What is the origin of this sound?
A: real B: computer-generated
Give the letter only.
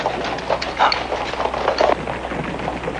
A